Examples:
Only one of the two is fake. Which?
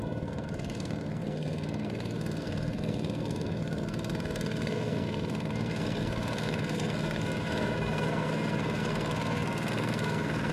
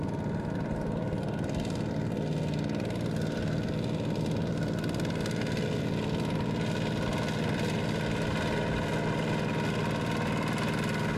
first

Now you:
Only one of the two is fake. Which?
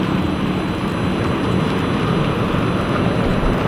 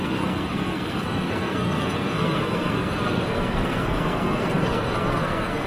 second